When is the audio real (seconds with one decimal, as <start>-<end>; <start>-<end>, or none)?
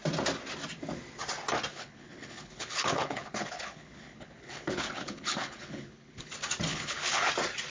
0.0-1.7; 6.3-6.7; 7.3-7.7